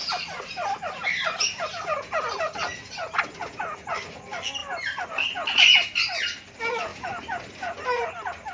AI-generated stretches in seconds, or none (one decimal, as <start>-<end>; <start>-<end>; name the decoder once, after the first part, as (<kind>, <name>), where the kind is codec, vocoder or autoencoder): 0.0-1.2 (vocoder, BigVGAN v2); 6.9-7.5